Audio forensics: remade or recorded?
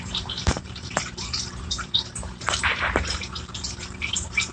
remade